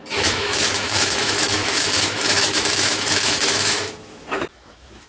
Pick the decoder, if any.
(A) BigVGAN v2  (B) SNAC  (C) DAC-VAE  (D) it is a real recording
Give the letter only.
C